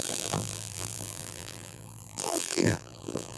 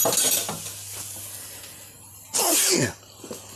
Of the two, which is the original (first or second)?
second